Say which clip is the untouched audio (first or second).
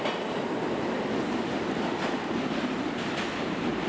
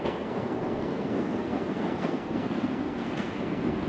first